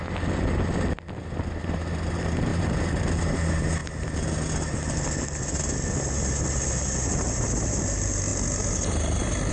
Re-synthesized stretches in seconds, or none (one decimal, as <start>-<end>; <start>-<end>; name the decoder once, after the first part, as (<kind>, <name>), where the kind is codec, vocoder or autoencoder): 2.5-3.4 (vocoder, BigVGAN v2); 7.1-7.8